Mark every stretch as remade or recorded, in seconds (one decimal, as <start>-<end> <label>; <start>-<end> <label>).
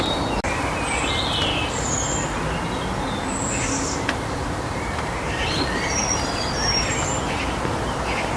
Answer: 0.0-8.4 recorded